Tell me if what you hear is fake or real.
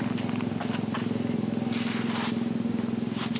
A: real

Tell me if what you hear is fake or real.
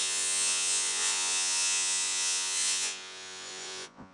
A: fake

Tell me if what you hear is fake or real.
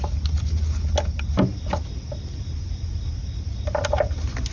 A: real